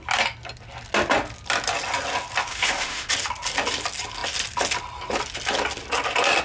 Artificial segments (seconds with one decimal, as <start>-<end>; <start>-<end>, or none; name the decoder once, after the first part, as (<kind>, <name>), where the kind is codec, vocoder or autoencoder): 2.5-3.1 (autoencoder, DAC-VAE)